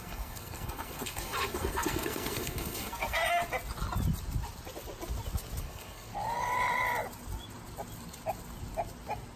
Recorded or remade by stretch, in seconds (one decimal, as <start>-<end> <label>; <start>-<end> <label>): 0.0-3.2 remade; 3.2-5.6 recorded; 5.6-6.1 remade; 6.1-9.4 recorded